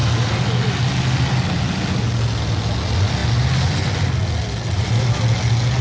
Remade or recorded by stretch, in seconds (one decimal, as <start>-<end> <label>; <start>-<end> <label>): 0.0-5.8 recorded